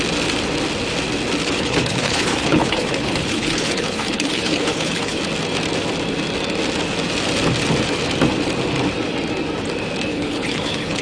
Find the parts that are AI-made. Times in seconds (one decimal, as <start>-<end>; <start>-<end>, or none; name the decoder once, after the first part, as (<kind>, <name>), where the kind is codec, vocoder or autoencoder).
1.4-5.2 (codec, HILCodec); 10.1-11.0

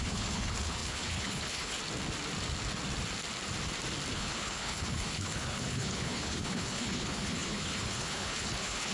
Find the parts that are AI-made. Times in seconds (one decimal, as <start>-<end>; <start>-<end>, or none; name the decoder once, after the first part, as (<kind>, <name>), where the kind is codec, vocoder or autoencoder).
0.0-1.8 (codec, HILCodec); 4.1-8.9

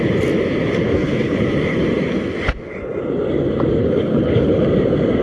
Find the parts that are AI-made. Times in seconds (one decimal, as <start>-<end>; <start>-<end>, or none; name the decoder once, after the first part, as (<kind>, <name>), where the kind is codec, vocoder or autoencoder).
0.8-1.4 (codec, HILCodec); 3.8-4.6

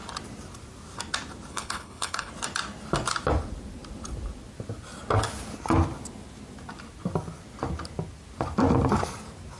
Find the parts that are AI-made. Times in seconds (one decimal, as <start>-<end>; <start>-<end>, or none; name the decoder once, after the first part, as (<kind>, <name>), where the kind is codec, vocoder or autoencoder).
1.5-2.3 (codec, HILCodec)

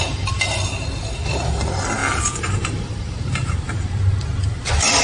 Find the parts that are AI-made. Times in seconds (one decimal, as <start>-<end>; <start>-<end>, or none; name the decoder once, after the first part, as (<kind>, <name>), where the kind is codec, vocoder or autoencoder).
none